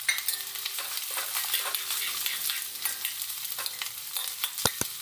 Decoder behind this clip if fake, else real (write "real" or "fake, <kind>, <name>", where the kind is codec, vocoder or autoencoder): real